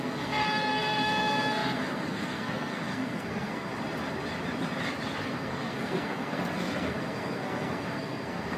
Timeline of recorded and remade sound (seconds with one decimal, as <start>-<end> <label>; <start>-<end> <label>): 0.0-3.7 remade; 3.7-5.2 recorded; 5.2-8.6 remade

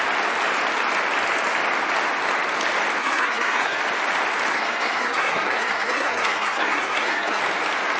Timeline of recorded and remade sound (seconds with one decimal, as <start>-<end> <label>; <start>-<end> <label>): 0.0-3.0 recorded; 3.0-3.8 remade; 3.8-4.5 recorded; 4.5-7.4 remade; 7.4-8.0 recorded

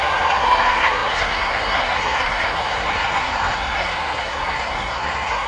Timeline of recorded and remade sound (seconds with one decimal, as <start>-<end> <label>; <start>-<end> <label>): 0.0-5.5 remade

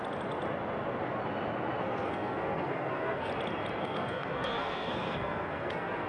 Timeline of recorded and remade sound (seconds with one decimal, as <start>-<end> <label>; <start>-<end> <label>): 0.0-1.8 recorded; 1.8-3.3 remade; 3.3-3.8 recorded; 3.8-6.1 remade

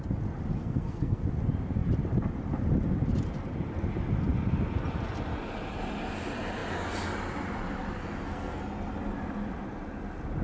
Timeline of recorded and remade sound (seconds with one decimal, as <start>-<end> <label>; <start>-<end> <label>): 0.0-0.6 recorded; 0.6-1.2 remade; 1.2-8.0 recorded; 8.0-8.6 remade; 8.6-10.4 recorded